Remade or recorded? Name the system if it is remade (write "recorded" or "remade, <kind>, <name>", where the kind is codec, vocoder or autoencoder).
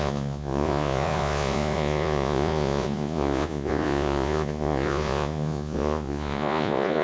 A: remade, vocoder, Vocos